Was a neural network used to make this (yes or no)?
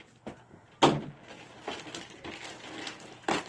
no